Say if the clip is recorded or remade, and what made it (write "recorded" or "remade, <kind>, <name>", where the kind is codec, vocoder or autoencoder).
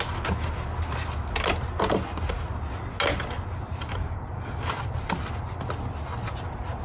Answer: recorded